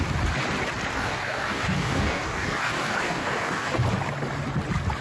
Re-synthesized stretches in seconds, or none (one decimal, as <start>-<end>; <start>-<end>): 0.9-3.7